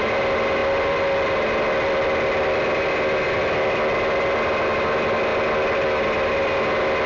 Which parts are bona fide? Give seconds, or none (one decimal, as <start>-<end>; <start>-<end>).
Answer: 0.0-7.1